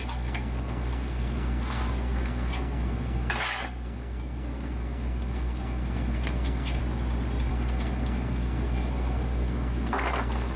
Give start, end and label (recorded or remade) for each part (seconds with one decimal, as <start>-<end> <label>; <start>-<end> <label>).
0.0-6.8 remade; 6.8-7.5 recorded; 7.5-10.6 remade

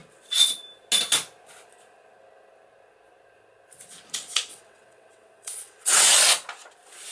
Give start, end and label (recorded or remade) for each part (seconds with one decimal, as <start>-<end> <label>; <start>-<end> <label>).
0.0-4.5 recorded; 4.5-6.1 remade; 6.1-7.1 recorded

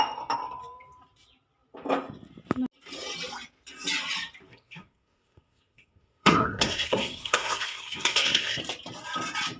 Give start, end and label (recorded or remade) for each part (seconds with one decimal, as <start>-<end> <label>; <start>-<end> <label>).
0.0-4.5 recorded; 4.5-8.6 remade; 8.6-9.6 recorded

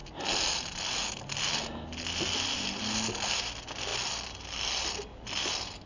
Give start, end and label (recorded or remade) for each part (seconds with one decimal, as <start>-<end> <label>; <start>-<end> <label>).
0.0-5.9 recorded